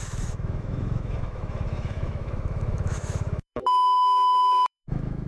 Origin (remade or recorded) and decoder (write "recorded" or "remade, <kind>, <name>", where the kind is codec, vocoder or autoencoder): remade, autoencoder, DAC-VAE